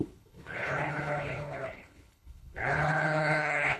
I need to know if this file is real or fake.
fake